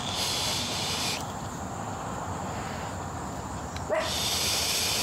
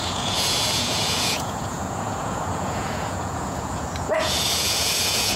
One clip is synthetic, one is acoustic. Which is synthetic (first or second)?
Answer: second